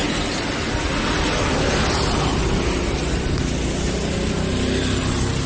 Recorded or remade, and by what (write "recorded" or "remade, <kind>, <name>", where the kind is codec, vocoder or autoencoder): recorded